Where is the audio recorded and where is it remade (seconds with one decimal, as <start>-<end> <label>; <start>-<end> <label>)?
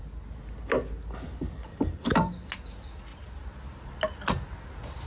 0.0-1.7 recorded; 1.7-2.3 remade; 2.3-3.1 recorded; 3.1-3.9 remade; 3.9-5.1 recorded